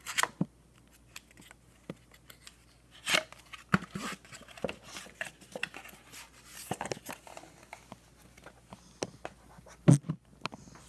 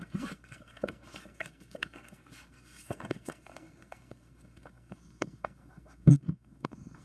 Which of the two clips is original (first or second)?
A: first